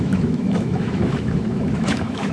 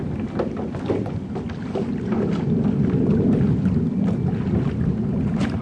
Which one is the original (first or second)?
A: second